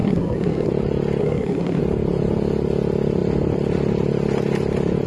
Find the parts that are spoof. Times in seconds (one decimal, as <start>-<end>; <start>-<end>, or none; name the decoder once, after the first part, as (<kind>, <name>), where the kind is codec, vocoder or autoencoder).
0.0-0.7 (codec, SNAC); 1.2-1.8